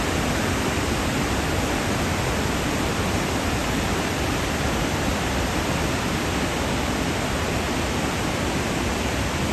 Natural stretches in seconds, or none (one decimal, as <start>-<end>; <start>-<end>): 0.0-3.6; 6.4-9.5